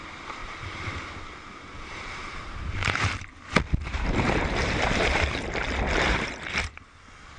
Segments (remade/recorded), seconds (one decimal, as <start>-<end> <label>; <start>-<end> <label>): 0.0-0.4 recorded; 0.4-3.2 remade; 3.2-3.9 recorded; 3.9-6.9 remade; 6.9-7.4 recorded